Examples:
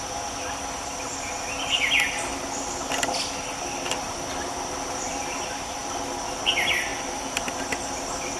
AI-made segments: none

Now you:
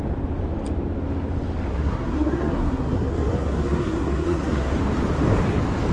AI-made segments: 1.7-4.8 (codec, SNAC)